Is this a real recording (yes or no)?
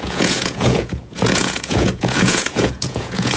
no